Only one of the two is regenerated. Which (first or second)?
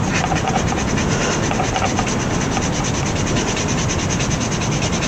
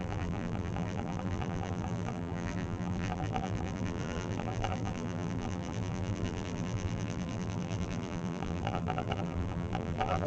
second